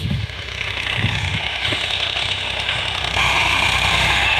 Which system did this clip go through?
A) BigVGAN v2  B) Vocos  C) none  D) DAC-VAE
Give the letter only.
D